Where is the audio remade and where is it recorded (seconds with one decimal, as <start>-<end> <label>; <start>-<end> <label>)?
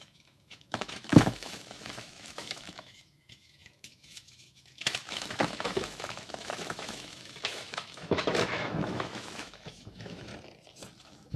0.0-10.3 remade; 10.3-11.0 recorded; 11.0-11.4 remade